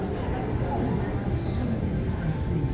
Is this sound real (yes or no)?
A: yes